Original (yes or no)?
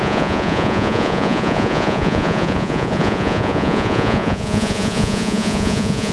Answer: no